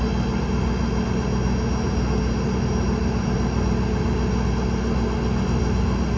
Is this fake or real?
real